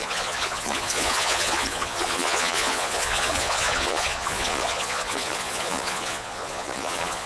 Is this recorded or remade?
remade